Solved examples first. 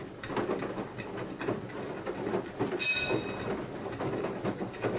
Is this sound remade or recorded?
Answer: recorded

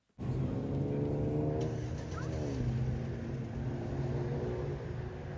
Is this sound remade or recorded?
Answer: recorded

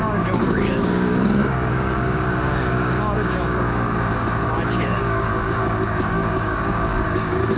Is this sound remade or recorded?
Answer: remade